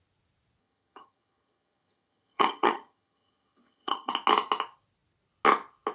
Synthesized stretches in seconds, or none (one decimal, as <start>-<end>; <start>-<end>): 0.6-4.1